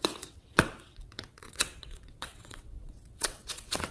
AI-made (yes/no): yes